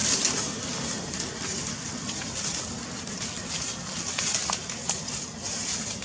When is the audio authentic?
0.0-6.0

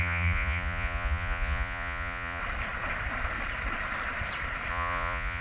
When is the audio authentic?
2.4-4.7

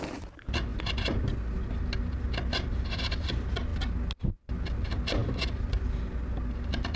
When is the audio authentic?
0.0-5.2; 5.8-7.0

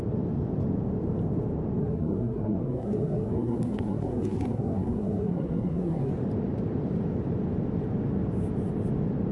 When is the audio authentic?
0.0-1.8; 6.1-9.3